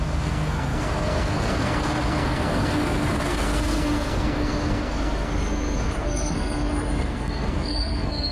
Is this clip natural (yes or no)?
no